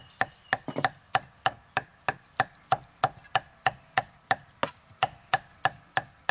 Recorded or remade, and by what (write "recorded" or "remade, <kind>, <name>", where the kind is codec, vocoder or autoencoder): recorded